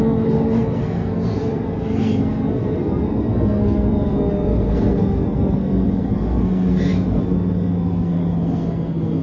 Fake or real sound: fake